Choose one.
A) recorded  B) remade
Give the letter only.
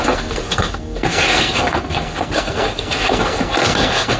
B